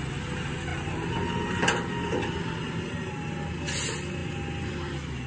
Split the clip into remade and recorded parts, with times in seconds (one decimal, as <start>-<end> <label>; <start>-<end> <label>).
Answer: 0.0-5.3 recorded